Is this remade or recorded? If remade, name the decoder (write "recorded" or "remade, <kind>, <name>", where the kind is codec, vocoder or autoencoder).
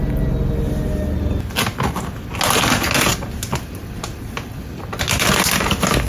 recorded